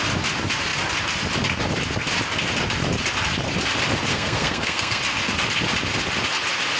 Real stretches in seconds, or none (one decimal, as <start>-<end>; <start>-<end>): 0.0-4.1; 5.0-6.8